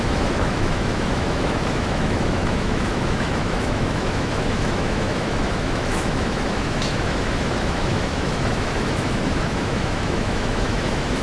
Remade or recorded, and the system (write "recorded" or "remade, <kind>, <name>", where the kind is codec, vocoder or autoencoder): remade, autoencoder, DAC-VAE